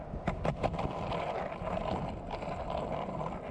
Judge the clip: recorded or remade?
recorded